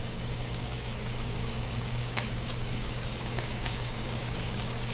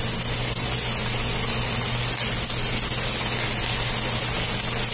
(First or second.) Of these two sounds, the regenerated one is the first